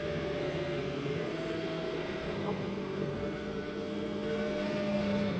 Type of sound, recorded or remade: remade